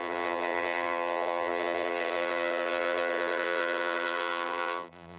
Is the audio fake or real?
fake